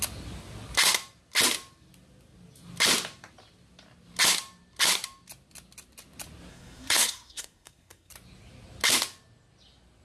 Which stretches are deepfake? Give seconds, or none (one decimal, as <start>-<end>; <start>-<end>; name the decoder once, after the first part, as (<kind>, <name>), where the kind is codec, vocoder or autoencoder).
6.5-8.1 (codec, SNAC)